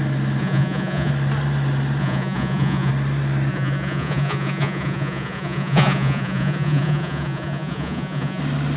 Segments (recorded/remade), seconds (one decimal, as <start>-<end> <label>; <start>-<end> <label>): 0.0-0.4 recorded; 0.4-1.1 remade; 1.1-2.0 recorded; 2.0-2.9 remade; 2.9-3.5 recorded; 3.5-8.4 remade; 8.4-8.8 recorded